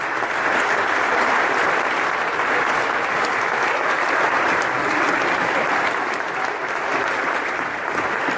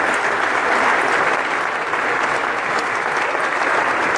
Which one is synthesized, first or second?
first